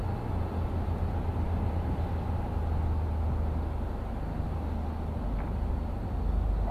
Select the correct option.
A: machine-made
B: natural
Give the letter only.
B